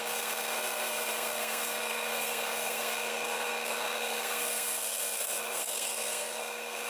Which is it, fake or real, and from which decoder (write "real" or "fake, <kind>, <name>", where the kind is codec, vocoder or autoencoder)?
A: fake, codec, SNAC